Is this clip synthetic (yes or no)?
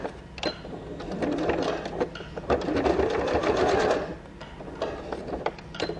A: no